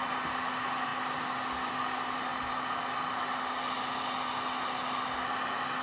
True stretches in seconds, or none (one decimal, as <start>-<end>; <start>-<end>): 0.0-5.8